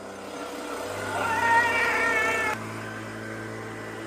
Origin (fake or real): real